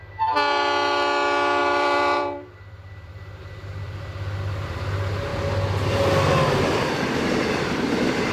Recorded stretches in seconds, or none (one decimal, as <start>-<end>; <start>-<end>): 0.0-1.6; 4.0-8.3